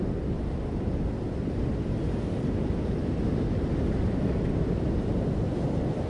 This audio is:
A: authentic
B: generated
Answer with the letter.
A